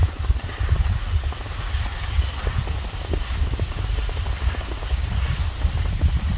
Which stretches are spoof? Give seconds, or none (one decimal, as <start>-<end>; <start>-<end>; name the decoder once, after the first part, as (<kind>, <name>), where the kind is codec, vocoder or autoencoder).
none